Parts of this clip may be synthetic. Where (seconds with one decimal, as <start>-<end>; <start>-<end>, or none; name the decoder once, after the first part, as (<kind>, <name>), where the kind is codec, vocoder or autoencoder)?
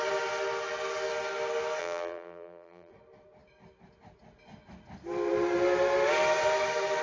1.8-2.9 (vocoder, BigVGAN v2)